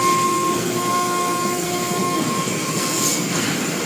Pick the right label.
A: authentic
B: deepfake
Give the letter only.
B